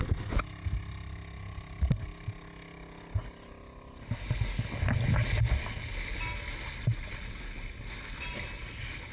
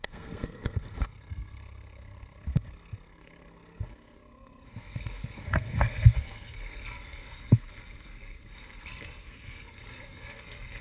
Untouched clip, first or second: first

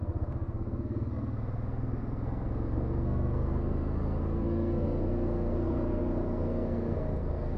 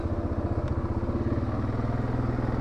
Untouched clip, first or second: second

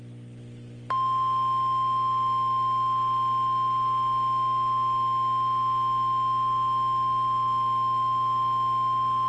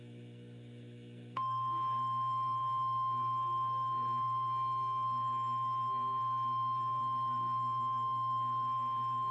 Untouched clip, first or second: first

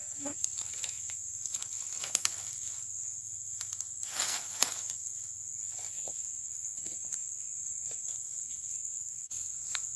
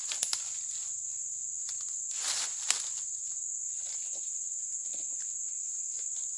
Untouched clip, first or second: second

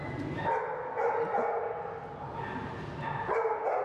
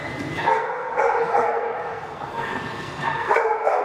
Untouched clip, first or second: first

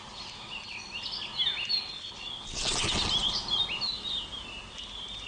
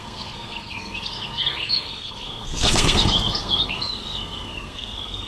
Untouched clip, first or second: first